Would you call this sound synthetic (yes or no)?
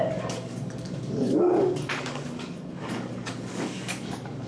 yes